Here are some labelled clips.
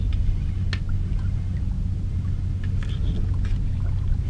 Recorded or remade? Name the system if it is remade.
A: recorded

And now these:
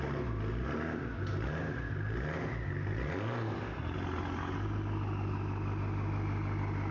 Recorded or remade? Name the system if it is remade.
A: recorded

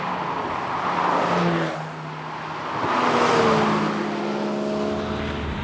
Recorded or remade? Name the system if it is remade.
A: recorded